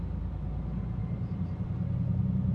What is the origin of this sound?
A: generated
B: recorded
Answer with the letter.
B